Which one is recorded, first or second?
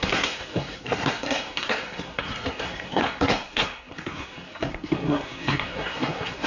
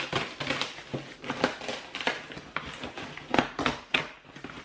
second